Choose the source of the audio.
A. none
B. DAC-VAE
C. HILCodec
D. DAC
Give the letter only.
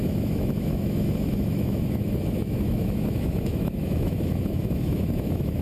B